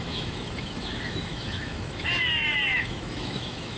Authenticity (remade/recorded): remade